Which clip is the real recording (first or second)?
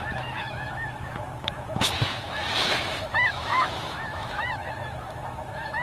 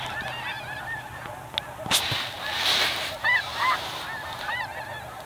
second